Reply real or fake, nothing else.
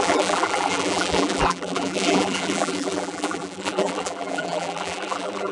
fake